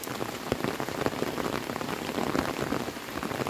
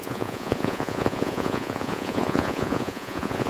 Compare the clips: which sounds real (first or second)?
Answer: first